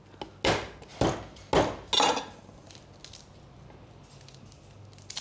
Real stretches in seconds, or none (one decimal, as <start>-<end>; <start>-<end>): 0.0-5.2